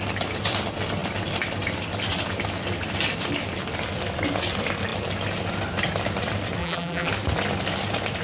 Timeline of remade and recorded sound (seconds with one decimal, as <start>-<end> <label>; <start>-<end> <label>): 0.0-6.6 recorded; 6.6-7.1 remade; 7.1-8.2 recorded